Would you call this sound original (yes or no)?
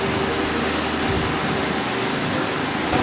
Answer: yes